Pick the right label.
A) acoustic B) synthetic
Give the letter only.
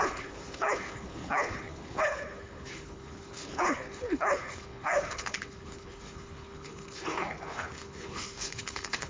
B